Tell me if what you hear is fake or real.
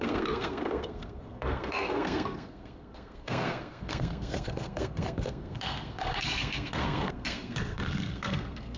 fake